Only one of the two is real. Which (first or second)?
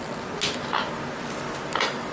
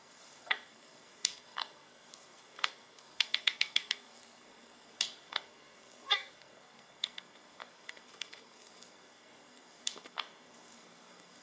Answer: first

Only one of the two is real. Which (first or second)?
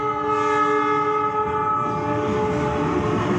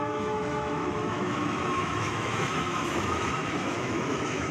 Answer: first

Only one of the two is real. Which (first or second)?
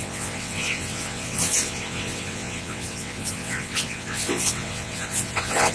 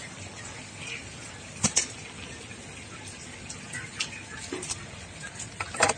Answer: second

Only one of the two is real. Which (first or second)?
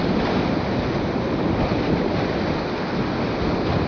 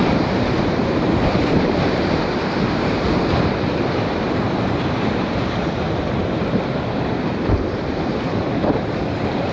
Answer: first